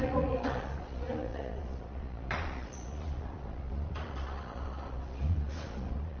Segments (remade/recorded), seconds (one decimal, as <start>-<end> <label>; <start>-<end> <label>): 0.0-6.2 remade